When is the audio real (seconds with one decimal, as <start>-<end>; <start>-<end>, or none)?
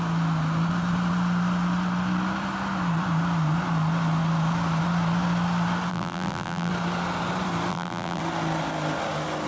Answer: 0.0-5.9; 6.7-7.7; 8.2-9.5